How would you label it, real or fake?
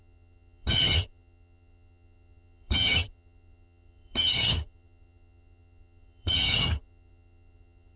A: fake